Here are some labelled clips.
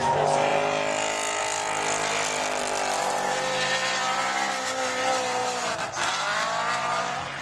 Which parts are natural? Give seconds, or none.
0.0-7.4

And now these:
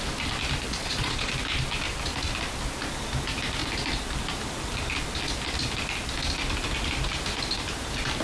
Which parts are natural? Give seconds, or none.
0.0-0.8; 1.3-8.2

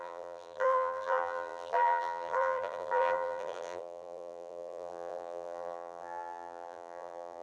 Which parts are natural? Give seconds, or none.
none

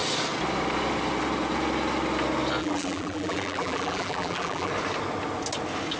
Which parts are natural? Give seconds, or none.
0.0-2.6; 4.7-6.0

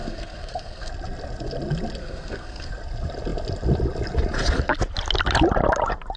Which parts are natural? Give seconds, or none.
0.9-2.0; 2.7-6.2

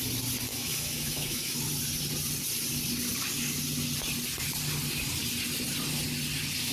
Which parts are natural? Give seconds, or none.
0.0-0.5; 1.6-6.7